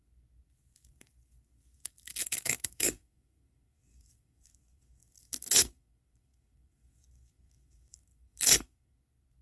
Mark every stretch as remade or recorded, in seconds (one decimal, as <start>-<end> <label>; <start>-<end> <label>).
0.0-9.4 remade